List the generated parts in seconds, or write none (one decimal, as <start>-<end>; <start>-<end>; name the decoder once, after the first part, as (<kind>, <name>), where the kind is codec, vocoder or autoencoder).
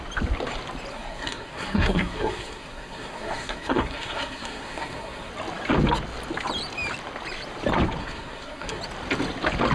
0.9-5.3 (codec, SNAC); 8.0-8.8